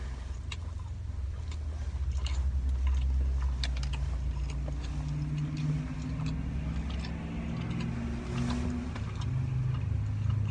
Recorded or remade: recorded